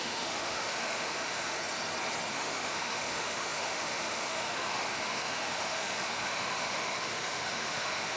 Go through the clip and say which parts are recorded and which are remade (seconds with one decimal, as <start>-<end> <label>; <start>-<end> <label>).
0.0-1.6 remade; 1.6-2.3 recorded; 2.3-8.2 remade